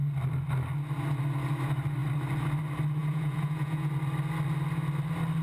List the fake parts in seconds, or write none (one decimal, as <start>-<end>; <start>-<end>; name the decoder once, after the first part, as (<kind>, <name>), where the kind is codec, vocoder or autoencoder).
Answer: 3.0-3.9 (vocoder, Vocos)